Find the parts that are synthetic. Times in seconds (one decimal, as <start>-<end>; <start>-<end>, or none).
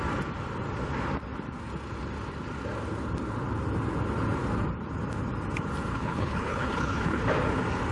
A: 5.9-7.2